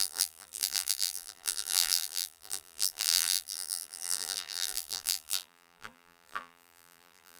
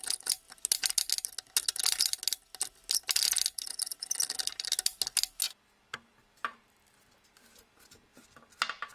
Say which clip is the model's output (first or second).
first